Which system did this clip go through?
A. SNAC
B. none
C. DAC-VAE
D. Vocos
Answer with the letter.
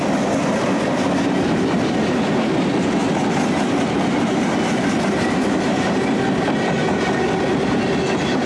B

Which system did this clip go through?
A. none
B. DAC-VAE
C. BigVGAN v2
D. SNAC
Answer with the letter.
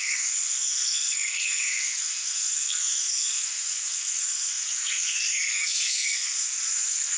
D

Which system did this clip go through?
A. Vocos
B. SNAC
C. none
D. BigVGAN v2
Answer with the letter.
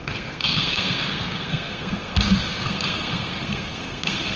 B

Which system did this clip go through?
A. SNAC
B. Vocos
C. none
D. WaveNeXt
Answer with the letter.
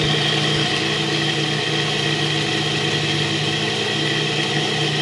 C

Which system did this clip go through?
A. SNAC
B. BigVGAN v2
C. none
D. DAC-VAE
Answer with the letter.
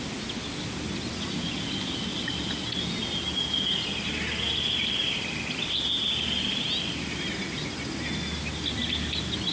C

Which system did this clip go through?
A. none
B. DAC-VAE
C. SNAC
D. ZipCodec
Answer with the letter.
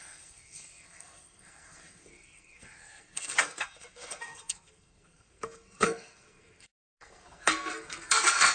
C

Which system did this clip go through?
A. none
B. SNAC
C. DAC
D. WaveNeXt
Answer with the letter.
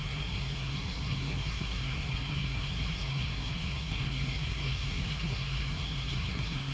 B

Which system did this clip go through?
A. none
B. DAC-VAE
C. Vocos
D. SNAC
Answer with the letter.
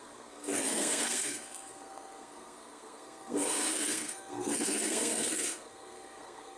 D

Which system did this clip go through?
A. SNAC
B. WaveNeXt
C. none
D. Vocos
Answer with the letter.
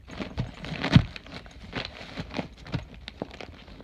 C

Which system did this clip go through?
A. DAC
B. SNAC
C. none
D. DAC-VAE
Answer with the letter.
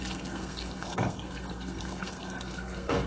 B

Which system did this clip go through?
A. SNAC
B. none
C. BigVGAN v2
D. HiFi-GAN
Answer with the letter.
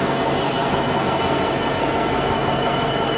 A